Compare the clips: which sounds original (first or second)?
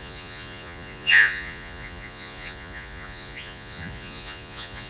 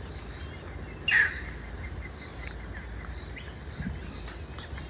second